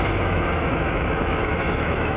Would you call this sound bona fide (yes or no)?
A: no